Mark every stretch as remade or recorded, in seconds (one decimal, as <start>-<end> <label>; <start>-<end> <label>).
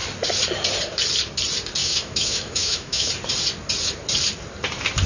0.0-1.8 recorded; 1.8-3.1 remade; 3.1-5.1 recorded